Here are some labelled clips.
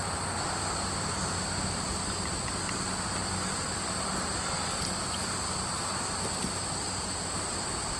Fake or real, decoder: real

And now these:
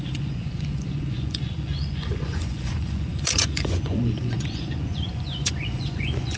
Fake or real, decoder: fake, vocoder, Vocos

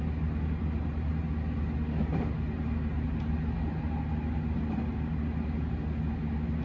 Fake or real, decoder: real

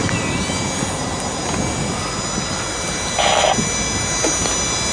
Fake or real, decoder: real